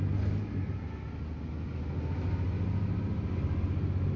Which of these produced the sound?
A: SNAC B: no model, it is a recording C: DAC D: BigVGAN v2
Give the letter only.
B